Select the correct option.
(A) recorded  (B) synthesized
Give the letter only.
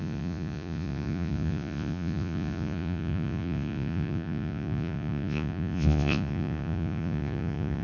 B